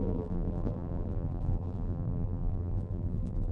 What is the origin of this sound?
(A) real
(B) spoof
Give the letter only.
B